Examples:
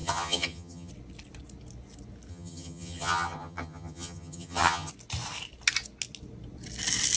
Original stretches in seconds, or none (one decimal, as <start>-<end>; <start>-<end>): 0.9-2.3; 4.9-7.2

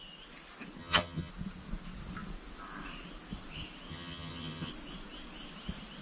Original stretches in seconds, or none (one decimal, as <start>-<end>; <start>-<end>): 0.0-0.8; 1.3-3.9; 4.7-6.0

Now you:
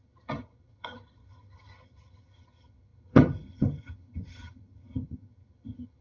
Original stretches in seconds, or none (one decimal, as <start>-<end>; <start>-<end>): none

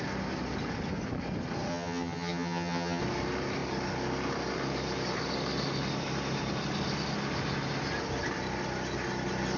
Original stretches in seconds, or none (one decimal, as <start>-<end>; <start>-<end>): 0.0-1.7; 3.0-9.6

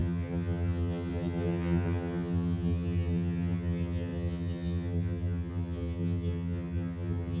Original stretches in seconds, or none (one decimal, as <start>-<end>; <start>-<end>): none

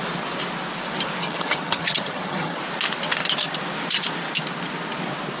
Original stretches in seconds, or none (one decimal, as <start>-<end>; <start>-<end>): 0.0-1.2; 2.6-5.4